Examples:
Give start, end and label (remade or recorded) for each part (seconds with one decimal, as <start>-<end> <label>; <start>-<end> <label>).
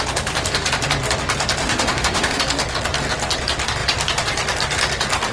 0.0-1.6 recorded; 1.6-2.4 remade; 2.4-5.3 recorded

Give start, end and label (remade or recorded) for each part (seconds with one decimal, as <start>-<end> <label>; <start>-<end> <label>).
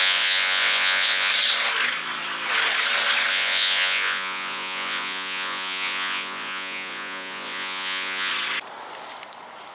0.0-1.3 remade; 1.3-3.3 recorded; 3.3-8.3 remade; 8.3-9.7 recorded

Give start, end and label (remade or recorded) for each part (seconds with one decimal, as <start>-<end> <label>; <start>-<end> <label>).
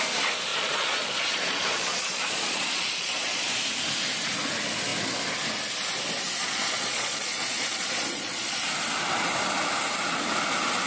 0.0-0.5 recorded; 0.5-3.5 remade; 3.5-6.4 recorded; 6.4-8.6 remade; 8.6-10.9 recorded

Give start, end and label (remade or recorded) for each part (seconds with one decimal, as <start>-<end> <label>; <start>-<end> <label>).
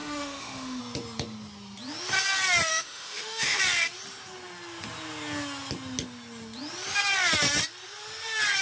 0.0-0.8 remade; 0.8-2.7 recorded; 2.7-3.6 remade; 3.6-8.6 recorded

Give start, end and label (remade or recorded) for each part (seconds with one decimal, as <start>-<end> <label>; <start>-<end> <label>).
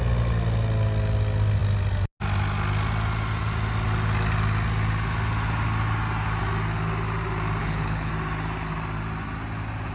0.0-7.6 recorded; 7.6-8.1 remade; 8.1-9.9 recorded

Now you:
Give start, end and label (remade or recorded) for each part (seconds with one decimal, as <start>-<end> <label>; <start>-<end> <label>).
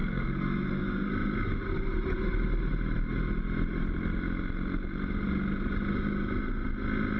0.0-1.1 remade; 1.1-7.2 recorded